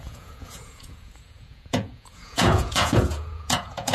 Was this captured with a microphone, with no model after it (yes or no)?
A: no